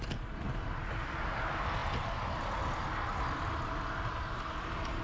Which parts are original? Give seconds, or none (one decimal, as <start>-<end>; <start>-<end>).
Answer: 0.0-5.0